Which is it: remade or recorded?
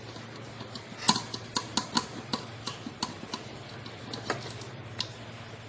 recorded